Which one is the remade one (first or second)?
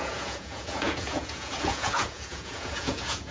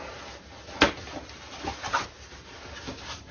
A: first